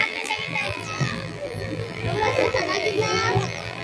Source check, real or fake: fake